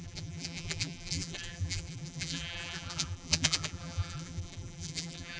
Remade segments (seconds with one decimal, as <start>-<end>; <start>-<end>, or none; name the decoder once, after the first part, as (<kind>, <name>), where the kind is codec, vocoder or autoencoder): 0.0-5.4 (vocoder, BigVGAN v2)

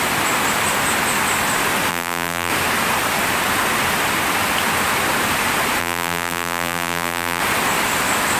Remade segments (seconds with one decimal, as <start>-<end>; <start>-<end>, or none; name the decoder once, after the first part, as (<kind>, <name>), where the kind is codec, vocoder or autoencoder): 1.9-2.5 (vocoder, BigVGAN v2); 5.8-7.4

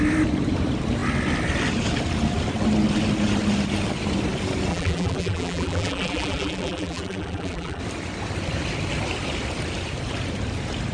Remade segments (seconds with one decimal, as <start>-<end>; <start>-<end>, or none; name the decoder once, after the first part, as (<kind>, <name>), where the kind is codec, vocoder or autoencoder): 4.7-7.8 (vocoder, BigVGAN v2)